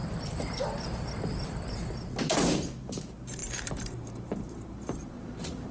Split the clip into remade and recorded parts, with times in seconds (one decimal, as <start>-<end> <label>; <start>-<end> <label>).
0.0-2.9 recorded; 2.9-5.7 remade